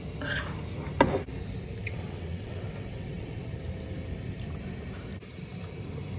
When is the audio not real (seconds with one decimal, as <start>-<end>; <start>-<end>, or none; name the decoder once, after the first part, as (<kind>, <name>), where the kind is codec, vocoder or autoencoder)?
1.8-3.4 (vocoder, WaveNeXt)

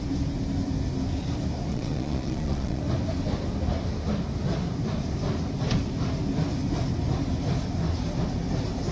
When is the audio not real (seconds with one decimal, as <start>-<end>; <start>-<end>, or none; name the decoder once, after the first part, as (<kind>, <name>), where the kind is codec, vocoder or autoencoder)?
1.7-2.8 (vocoder, Vocos)

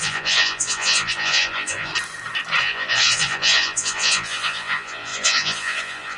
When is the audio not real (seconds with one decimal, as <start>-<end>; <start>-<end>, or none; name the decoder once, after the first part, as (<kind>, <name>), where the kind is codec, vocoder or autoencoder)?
0.0-1.9 (vocoder, Vocos); 2.6-6.2

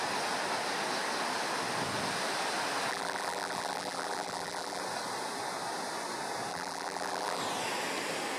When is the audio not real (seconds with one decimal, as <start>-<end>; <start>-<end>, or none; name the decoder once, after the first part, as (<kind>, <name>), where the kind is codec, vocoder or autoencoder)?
2.9-4.8 (vocoder, BigVGAN v2); 6.5-7.4

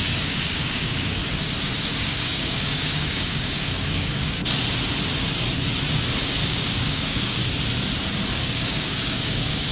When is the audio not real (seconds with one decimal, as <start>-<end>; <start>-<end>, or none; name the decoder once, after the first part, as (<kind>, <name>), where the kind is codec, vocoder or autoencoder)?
0.0-1.2 (codec, DAC); 2.0-4.4; 6.5-7.4; 8.3-9.7

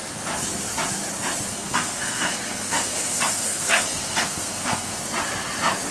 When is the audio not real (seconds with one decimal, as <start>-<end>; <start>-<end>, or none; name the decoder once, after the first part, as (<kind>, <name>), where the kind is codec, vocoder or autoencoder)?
1.5-5.0 (codec, SNAC)

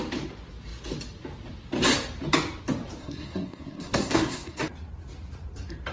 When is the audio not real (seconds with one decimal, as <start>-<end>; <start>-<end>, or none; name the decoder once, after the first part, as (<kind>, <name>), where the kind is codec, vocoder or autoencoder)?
3.0-4.6 (codec, SNAC)

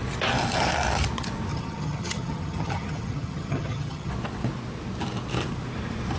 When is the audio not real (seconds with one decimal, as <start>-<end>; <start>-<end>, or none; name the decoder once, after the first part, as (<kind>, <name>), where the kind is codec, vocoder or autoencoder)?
1.5-4.1 (vocoder, HiFi-GAN)